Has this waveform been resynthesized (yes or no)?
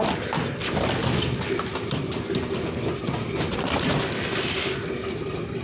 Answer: no